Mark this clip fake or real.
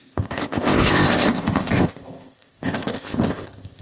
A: fake